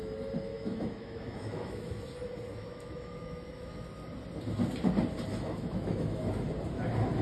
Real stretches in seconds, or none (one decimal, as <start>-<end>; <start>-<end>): 0.0-0.5; 2.0-2.5; 3.9-5.3; 6.5-7.2